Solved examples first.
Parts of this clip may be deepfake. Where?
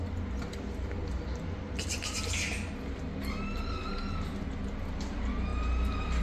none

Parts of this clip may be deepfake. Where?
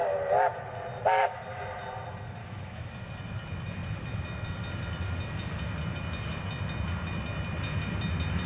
2.4-2.9 (autoencoder, DAC-VAE)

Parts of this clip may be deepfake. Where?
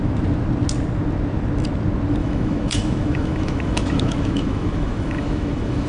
2.2-5.9 (autoencoder, DAC-VAE)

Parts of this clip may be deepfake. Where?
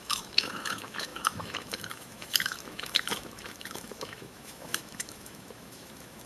0.0-6.3 (autoencoder, DAC-VAE)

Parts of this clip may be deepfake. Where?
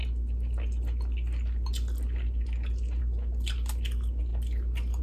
none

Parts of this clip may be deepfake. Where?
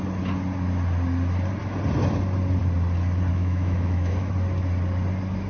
3.3-4.3 (autoencoder, DAC-VAE)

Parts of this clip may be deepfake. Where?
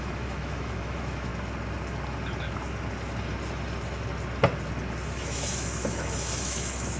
0.0-1.3 (autoencoder, DAC-VAE); 5.1-7.0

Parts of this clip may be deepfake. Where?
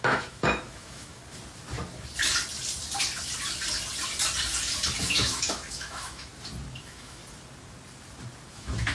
0.0-1.2 (autoencoder, DAC-VAE); 5.0-6.3; 6.8-7.2; 8.5-8.9